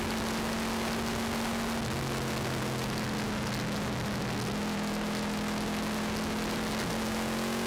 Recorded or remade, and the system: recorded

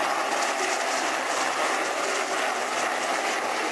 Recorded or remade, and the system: recorded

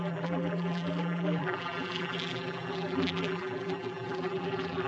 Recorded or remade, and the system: remade, vocoder, BigVGAN v2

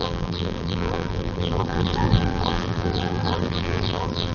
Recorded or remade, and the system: remade, vocoder, BigVGAN v2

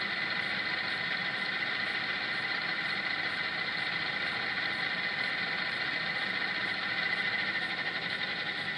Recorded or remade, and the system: recorded